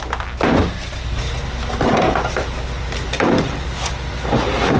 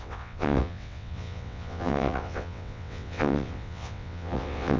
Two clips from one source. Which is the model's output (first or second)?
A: second